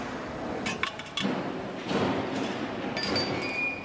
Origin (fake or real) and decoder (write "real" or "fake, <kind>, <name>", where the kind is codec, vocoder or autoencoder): real